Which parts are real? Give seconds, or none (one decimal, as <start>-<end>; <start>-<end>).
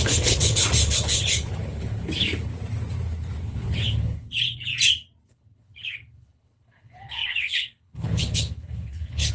2.5-3.4; 4.7-5.3